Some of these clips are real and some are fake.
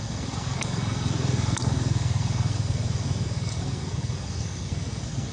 fake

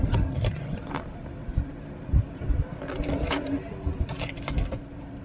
real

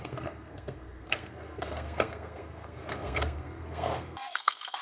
fake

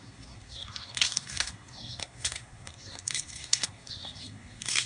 fake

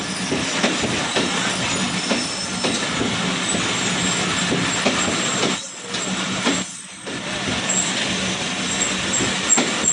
real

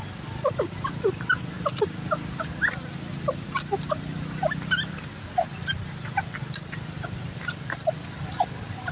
real